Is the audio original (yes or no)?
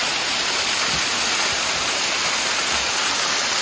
yes